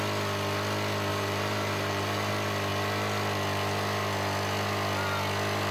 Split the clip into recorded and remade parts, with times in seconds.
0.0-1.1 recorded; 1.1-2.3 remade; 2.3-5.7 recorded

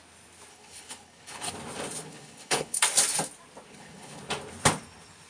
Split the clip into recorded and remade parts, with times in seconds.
0.0-0.5 recorded; 0.5-1.5 remade; 1.5-2.0 recorded; 2.0-2.8 remade; 2.8-3.7 recorded; 3.7-4.2 remade; 4.2-5.3 recorded